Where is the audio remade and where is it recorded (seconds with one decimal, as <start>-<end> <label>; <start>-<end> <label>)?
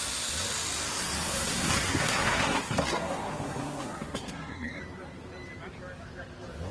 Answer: 0.0-1.3 recorded; 1.3-4.8 remade; 4.8-6.7 recorded